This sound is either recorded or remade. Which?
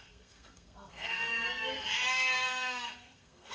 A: remade